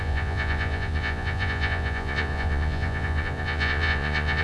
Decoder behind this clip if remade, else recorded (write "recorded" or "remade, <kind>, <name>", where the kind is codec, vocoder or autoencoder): remade, vocoder, Vocos